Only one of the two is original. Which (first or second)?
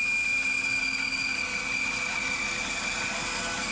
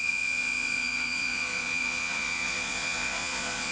first